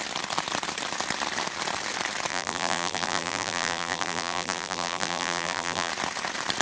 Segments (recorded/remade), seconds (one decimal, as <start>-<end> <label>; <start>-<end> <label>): 0.0-2.3 recorded; 2.3-5.9 remade; 5.9-6.6 recorded